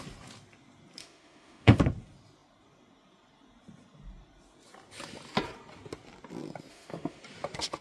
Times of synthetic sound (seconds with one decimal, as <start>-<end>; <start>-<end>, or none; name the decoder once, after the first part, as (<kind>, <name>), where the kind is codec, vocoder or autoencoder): 1.0-1.8 (autoencoder, DAC-VAE); 6.7-7.2